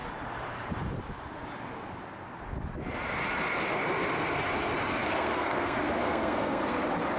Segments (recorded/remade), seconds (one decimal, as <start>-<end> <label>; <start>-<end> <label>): 0.0-5.0 recorded; 5.0-6.8 remade; 6.8-7.2 recorded